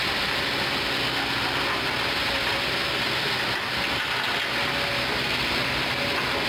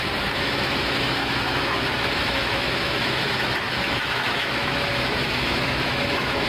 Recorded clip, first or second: first